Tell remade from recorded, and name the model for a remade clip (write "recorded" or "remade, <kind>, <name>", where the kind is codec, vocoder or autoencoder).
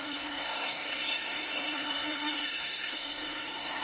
remade, codec, SNAC